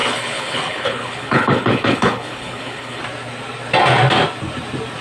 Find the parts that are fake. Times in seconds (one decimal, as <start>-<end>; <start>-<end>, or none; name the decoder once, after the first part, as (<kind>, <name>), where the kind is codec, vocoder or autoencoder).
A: 0.0-3.0 (codec, HILCodec)